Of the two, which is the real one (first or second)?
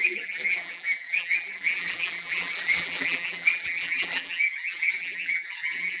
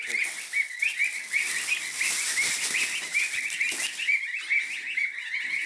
second